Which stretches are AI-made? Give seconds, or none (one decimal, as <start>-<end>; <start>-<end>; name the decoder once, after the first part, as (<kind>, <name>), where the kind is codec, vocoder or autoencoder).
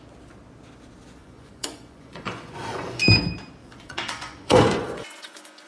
1.2-3.0 (vocoder, Vocos); 3.6-5.7